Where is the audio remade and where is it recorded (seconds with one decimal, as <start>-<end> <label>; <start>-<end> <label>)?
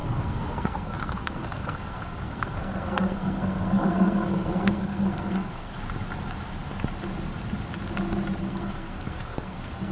0.0-5.7 remade; 5.7-8.4 recorded; 8.4-9.9 remade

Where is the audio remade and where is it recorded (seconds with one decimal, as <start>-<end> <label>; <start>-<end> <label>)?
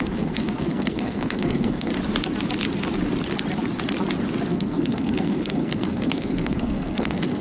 0.0-1.9 remade; 1.9-4.5 recorded; 4.5-7.4 remade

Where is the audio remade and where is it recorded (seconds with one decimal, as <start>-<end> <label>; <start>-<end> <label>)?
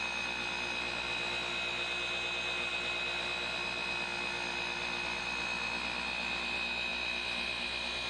0.0-8.1 recorded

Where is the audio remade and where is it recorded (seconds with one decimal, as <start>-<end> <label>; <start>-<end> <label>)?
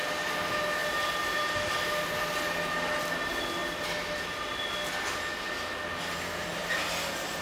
0.0-7.4 recorded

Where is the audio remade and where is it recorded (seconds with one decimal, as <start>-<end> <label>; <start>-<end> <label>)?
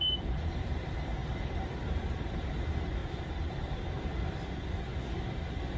0.0-3.0 remade; 3.0-3.5 recorded; 3.5-4.9 remade; 4.9-5.8 recorded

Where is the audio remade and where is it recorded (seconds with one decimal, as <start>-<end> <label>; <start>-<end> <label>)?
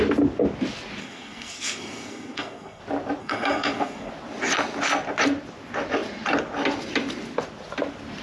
0.0-1.0 recorded; 1.0-2.8 remade; 2.8-3.2 recorded; 3.2-4.1 remade; 4.1-8.2 recorded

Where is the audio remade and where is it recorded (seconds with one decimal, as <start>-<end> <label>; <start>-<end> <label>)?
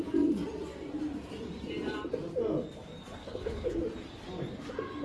0.0-3.2 recorded; 3.2-3.8 remade; 3.8-5.0 recorded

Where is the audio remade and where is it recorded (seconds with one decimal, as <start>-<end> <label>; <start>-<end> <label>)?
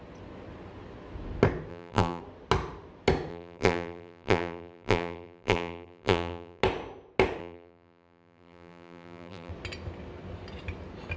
0.0-1.7 recorded; 1.7-2.2 remade; 2.2-3.3 recorded; 3.3-6.6 remade; 6.6-7.4 recorded; 7.4-9.5 remade; 9.5-11.2 recorded